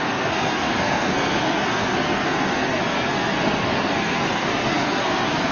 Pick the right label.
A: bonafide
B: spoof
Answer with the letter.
B